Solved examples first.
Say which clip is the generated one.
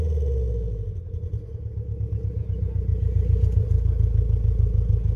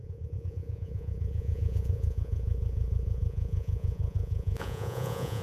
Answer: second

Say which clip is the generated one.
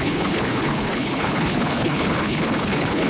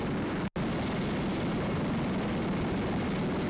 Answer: first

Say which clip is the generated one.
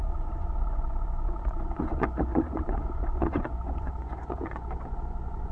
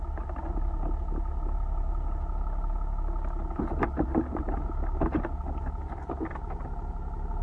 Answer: first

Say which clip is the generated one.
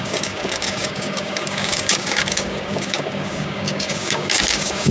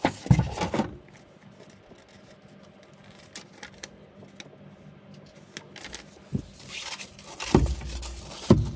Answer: first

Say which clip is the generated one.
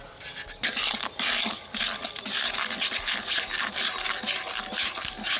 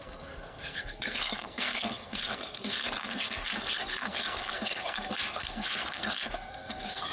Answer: second